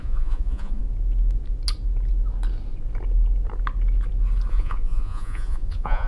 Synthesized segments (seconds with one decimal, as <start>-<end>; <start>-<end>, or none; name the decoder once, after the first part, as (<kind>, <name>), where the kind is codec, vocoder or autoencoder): 0.0-0.8 (vocoder, Vocos); 4.5-6.1